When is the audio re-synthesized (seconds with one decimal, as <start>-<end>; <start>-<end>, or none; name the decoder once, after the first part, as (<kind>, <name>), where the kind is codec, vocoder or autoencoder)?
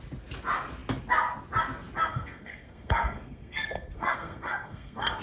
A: 2.1-5.2 (codec, SNAC)